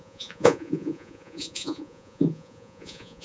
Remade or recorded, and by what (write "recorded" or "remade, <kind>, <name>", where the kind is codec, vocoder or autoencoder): remade, vocoder, Vocos